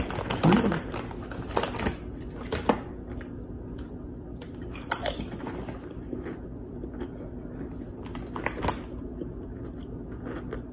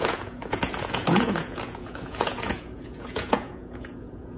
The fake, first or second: second